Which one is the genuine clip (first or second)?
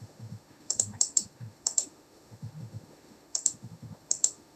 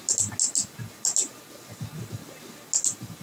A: second